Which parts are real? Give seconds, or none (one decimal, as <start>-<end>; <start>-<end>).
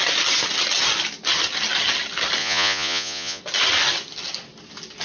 0.0-2.4; 3.4-5.0